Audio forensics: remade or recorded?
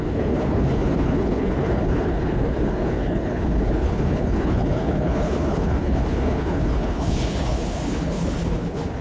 remade